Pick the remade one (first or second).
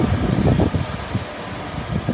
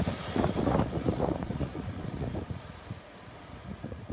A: second